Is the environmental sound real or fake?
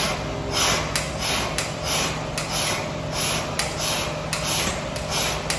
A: real